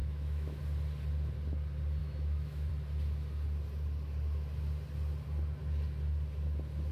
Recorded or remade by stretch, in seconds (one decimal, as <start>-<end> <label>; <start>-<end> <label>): 0.0-0.6 remade; 0.6-2.0 recorded; 2.0-2.7 remade; 2.7-6.9 recorded

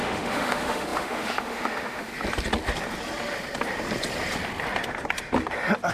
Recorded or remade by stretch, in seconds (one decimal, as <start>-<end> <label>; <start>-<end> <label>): 0.0-2.1 remade; 2.1-5.9 recorded

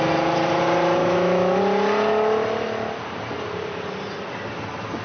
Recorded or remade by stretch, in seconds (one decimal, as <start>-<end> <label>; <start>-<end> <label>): 0.0-1.0 recorded; 1.0-1.6 remade; 1.6-5.0 recorded

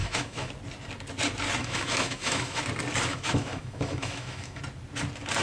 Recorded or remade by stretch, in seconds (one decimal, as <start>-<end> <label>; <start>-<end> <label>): 0.0-0.5 remade; 0.5-1.6 recorded; 1.6-2.6 remade; 2.6-3.1 recorded; 3.1-4.6 remade; 4.6-5.4 recorded

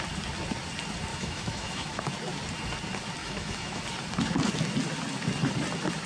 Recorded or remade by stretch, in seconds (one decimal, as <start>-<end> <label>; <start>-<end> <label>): 0.0-1.1 recorded; 1.1-2.0 remade; 2.0-3.2 recorded; 3.2-3.8 remade; 3.8-6.1 recorded

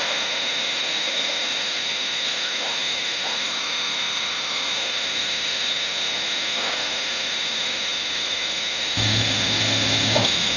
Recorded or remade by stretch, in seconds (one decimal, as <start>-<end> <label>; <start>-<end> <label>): 0.0-10.6 remade

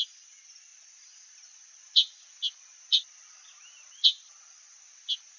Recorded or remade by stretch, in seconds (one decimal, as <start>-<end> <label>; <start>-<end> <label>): 0.0-5.4 recorded